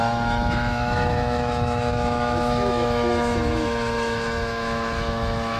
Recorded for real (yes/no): no